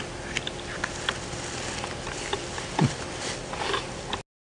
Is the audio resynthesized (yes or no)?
no